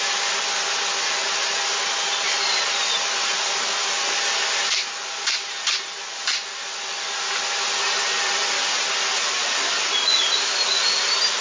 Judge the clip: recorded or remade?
recorded